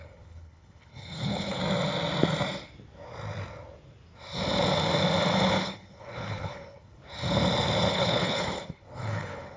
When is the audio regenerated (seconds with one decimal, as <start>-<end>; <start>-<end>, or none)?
0.0-1.6; 5.6-7.0; 7.9-9.6